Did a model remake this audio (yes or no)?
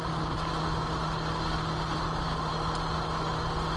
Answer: no